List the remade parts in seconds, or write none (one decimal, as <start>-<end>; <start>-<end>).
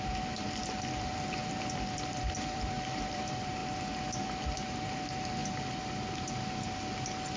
0.0-3.6; 4.2-5.4